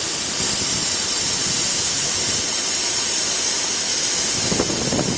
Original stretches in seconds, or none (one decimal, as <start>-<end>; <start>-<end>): 0.0-1.7; 2.2-5.2

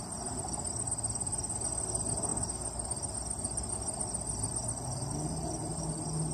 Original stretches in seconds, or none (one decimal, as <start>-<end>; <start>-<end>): 0.0-6.3

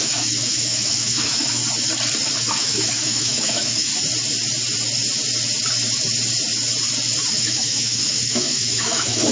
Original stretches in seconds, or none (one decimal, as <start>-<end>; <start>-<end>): 1.6-2.5; 3.9-7.3

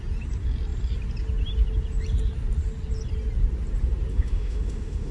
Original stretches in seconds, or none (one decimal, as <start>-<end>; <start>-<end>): 0.0-4.1

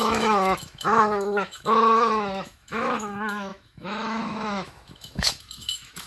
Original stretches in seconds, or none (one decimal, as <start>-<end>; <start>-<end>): none

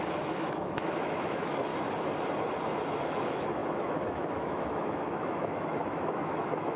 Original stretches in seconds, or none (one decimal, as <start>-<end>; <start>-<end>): 1.7-3.0